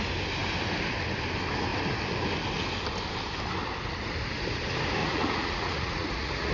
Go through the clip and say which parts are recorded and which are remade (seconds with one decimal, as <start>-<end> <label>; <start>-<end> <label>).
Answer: 0.0-5.0 recorded; 5.0-6.5 remade